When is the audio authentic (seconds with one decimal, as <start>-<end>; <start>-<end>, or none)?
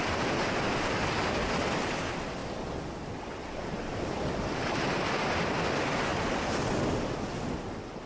0.0-8.1